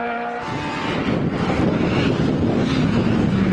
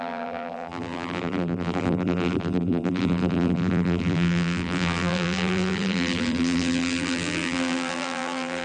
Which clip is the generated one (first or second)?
second